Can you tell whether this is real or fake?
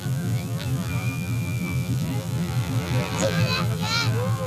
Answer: fake